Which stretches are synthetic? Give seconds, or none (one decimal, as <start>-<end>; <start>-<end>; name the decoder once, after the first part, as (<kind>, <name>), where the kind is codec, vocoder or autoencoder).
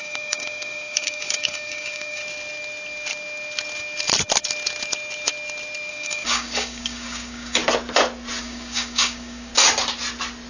0.0-2.2 (codec, DAC); 5.9-7.6; 8.4-9.5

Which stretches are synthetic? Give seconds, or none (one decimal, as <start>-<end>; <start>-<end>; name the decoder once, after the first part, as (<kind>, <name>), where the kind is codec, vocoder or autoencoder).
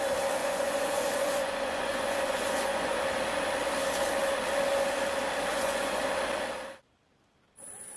0.4-3.0 (vocoder, Vocos); 5.5-6.0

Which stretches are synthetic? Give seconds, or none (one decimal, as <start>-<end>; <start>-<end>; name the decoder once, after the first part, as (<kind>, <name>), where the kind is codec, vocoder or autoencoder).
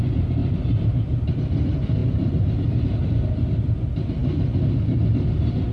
0.4-1.3 (vocoder, BigVGAN v2); 2.0-3.3; 4.2-5.0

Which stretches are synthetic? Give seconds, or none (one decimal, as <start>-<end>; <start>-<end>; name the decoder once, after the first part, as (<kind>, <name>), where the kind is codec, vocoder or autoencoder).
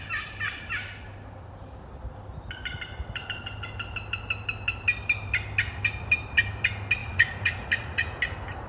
7.0-8.2 (vocoder, Vocos)